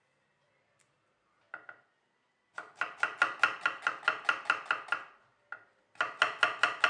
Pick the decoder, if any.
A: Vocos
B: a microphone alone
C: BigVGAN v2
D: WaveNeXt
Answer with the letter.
B